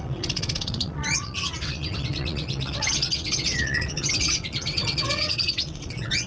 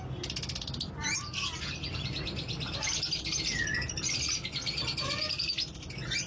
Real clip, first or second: second